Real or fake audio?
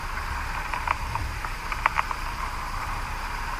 fake